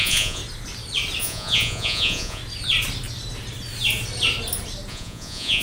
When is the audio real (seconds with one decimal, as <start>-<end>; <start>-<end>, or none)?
0.4-1.2; 2.4-4.9